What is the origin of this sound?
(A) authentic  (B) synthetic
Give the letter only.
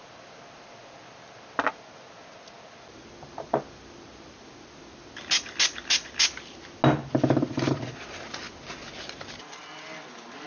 A